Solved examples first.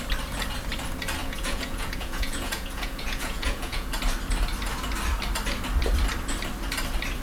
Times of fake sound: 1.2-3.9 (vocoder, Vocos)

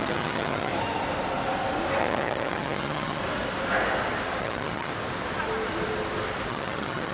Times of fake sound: 0.0-0.7 (vocoder, HiFi-GAN); 2.0-3.2; 4.4-4.9; 6.5-7.1

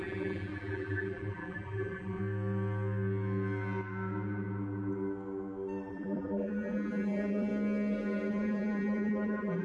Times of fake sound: 0.0-2.2 (vocoder, BigVGAN v2); 5.9-7.5; 8.3-9.6

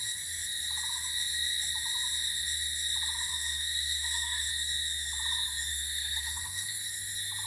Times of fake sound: 3.3-4.5 (codec, SNAC); 5.7-6.8

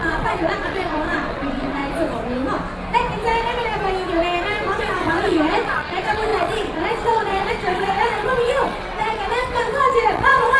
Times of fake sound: 0.0-1.8 (vocoder, WaveNeXt); 4.8-10.6

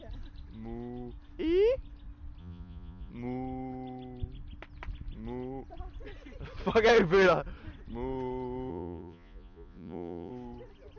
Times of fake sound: 2.4-3.1 (vocoder, Vocos); 8.7-10.3